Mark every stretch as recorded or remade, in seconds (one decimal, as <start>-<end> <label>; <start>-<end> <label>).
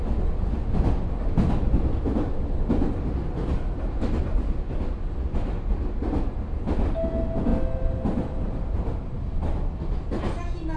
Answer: 0.0-10.8 recorded